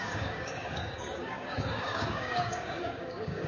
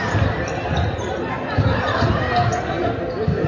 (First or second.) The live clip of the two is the second